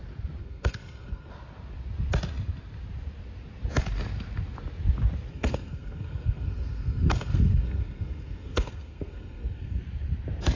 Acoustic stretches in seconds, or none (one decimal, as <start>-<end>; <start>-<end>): 0.0-0.4; 1.3-5.3; 9.8-10.6